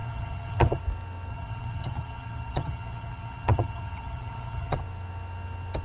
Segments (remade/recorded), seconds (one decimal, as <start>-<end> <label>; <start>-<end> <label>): 0.0-0.8 remade; 0.8-1.3 recorded; 1.3-4.8 remade; 4.8-5.8 recorded